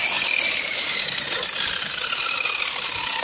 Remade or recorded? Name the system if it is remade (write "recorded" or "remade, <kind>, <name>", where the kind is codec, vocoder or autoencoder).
recorded